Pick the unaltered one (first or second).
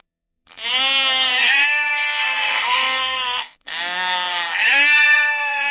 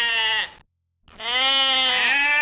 second